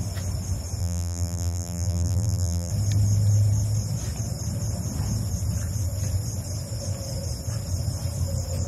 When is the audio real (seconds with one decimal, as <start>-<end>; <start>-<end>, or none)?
0.0-0.8; 2.7-8.7

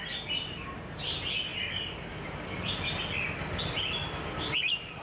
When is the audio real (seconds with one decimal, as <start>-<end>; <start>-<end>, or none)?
0.0-5.0

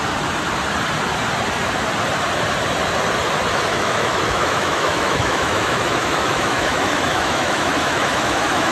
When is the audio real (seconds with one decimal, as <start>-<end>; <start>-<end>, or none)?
0.0-3.7